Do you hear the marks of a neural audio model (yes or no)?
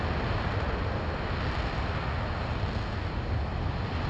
no